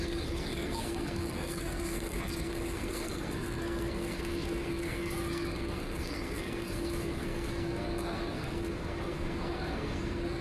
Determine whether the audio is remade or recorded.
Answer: remade